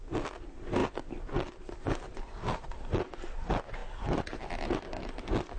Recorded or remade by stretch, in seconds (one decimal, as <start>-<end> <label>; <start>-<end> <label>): 0.0-5.6 recorded